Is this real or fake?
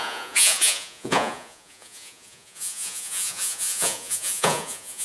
fake